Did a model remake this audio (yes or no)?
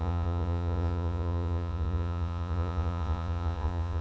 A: yes